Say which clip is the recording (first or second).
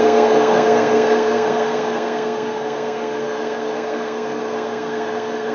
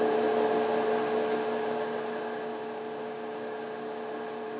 second